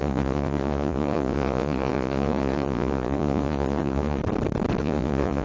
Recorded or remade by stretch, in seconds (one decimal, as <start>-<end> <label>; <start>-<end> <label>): 0.0-4.2 remade; 4.2-4.8 recorded; 4.8-5.4 remade